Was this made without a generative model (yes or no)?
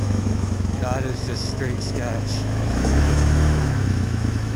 no